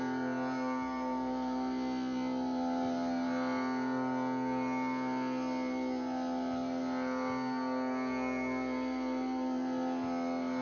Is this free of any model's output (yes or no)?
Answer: yes